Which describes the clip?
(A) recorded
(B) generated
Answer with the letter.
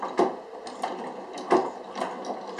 A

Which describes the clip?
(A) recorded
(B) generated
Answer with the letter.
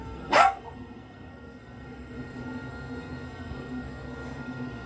B